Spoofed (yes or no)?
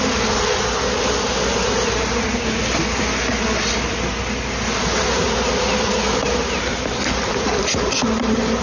no